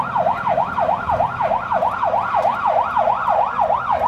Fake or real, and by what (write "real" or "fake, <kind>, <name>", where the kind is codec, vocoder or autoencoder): real